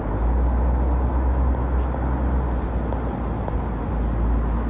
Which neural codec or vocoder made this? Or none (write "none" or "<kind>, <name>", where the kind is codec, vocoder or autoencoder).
none